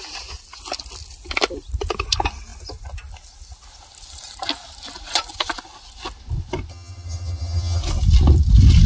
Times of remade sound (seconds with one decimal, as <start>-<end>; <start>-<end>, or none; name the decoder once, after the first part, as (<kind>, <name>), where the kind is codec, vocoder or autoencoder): 6.7-7.8 (vocoder, HiFi-GAN)